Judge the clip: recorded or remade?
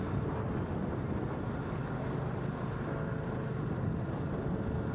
recorded